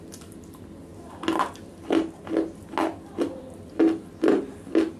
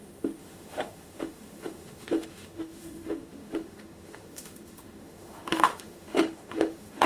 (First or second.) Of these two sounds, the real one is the first